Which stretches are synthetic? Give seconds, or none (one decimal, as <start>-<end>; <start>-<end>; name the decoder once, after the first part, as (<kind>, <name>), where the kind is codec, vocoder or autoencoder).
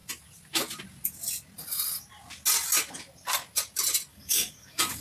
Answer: 4.1-5.0 (codec, DAC)